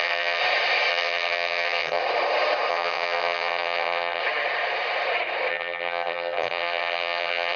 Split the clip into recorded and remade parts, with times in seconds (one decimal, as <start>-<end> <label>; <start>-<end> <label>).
0.0-0.4 remade; 0.4-0.9 recorded; 0.9-2.0 remade; 2.0-2.7 recorded; 2.7-4.2 remade; 4.2-5.5 recorded; 5.5-7.6 remade